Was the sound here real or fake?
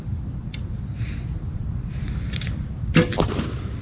real